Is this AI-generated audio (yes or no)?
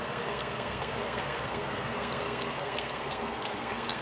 yes